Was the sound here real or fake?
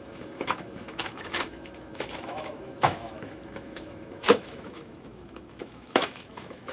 fake